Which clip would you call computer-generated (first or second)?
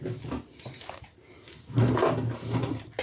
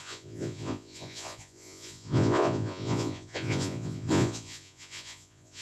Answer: second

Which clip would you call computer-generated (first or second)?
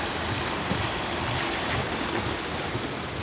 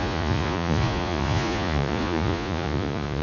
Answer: second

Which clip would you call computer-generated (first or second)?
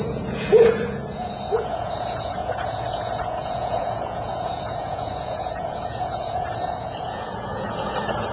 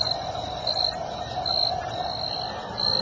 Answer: first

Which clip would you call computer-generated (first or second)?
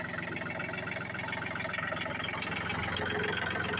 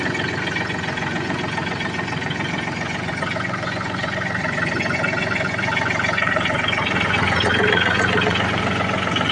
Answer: second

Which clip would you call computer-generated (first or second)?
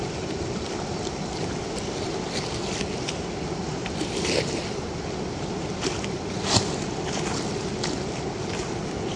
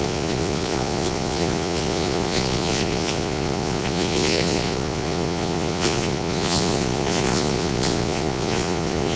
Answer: second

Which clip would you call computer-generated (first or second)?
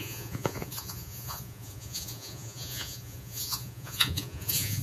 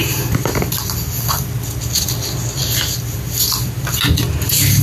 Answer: first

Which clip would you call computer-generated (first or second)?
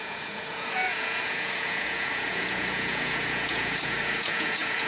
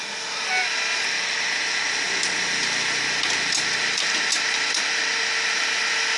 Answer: first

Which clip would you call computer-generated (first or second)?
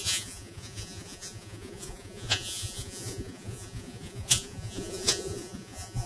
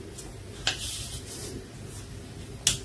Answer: first